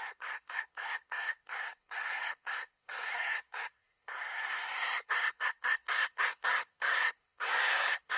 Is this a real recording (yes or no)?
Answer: no